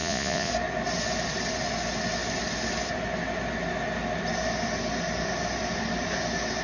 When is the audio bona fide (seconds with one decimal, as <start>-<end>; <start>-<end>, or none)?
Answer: 0.5-6.6